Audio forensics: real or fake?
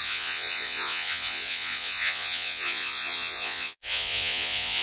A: fake